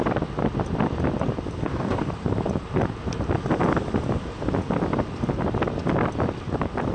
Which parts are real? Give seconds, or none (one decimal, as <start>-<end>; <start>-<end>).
0.0-1.6; 2.1-6.9